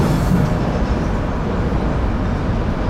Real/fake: real